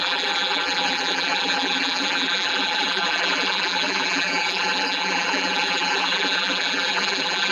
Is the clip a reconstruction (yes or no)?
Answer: yes